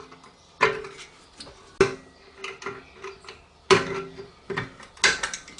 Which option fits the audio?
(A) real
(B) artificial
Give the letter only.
A